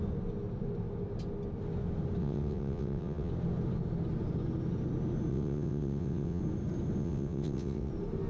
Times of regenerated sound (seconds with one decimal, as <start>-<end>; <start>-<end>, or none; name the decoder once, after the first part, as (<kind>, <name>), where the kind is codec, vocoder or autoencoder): 2.2-3.3 (vocoder, WaveNeXt); 5.3-6.4; 7.0-7.9